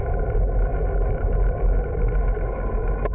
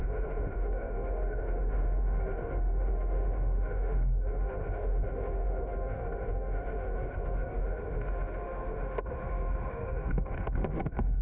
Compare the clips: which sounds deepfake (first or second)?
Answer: second